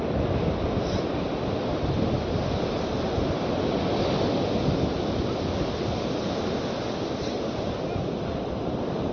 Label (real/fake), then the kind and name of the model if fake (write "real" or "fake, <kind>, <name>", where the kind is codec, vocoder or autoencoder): real